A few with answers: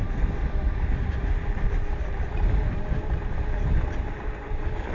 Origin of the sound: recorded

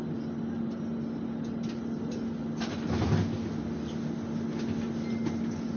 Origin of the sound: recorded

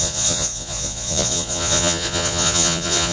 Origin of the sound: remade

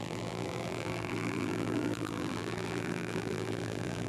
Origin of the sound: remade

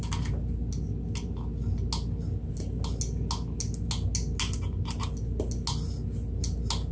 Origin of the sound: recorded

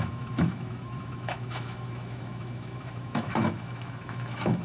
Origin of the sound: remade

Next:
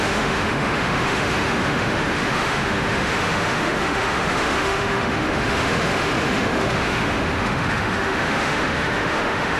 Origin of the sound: remade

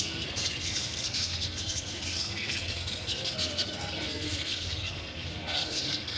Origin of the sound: remade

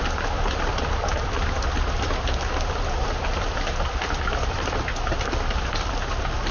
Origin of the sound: recorded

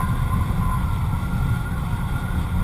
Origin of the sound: recorded